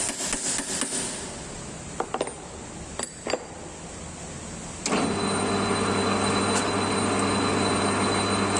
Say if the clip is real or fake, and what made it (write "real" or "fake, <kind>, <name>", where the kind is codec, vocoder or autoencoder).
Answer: real